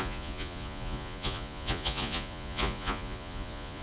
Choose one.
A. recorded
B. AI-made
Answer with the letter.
B